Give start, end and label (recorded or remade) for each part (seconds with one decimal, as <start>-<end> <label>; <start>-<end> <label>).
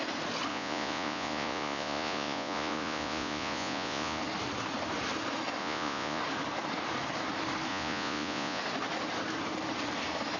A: 0.0-0.5 recorded; 0.5-4.2 remade; 4.2-5.6 recorded; 5.6-6.2 remade; 6.2-7.7 recorded; 7.7-8.6 remade; 8.6-10.4 recorded